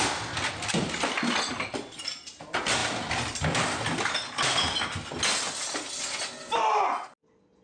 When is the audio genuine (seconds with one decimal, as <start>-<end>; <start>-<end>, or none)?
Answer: 0.0-7.6